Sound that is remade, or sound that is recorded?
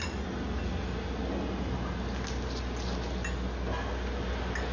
recorded